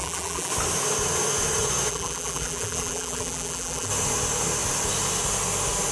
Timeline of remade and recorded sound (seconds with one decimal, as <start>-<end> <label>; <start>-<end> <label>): 0.0-0.5 remade; 0.5-1.9 recorded; 1.9-3.9 remade; 3.9-5.9 recorded